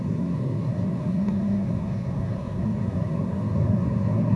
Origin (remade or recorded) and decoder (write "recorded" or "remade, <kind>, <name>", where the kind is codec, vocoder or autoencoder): remade, codec, SNAC